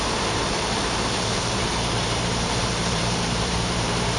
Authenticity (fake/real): fake